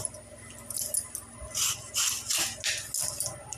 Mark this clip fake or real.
real